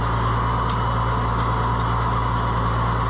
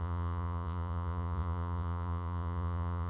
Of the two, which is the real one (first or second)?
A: first